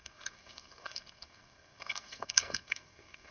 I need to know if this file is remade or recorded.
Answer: remade